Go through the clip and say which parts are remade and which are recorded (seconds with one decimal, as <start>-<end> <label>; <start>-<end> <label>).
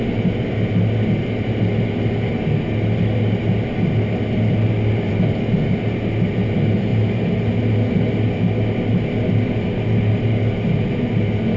0.0-11.6 recorded